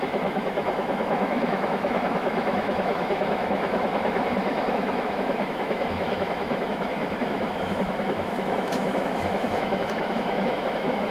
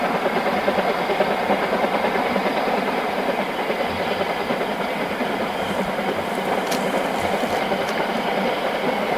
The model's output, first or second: first